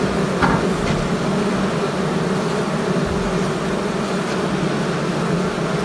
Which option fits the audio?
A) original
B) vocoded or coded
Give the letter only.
A